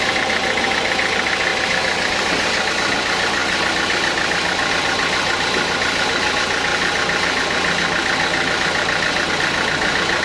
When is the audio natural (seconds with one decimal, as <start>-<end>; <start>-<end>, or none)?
0.0-10.2